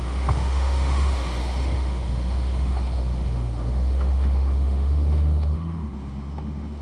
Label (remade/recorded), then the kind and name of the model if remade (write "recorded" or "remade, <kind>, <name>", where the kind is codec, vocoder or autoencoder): remade, autoencoder, DAC-VAE